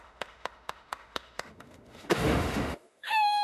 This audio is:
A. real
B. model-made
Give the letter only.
B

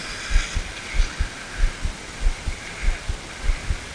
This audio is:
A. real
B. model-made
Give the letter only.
A